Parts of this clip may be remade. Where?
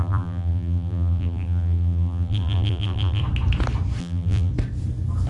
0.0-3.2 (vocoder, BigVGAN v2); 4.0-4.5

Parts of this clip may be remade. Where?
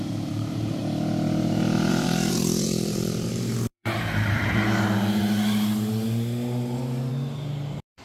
0.0-0.8 (vocoder, BigVGAN v2); 1.9-5.2; 7.1-8.0